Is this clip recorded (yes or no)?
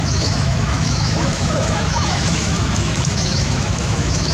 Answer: no